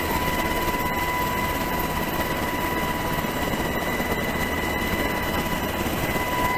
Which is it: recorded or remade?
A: recorded